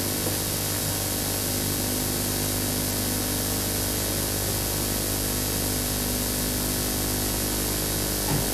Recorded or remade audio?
recorded